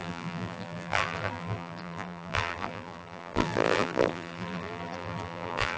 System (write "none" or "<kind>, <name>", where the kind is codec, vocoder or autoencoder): vocoder, BigVGAN v2